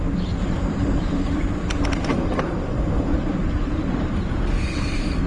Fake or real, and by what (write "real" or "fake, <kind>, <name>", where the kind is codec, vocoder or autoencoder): fake, vocoder, BigVGAN v2